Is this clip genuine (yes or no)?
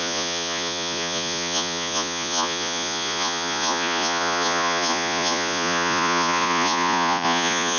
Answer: no